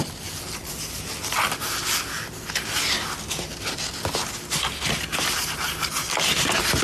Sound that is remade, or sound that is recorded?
recorded